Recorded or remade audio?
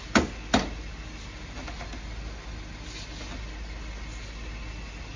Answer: recorded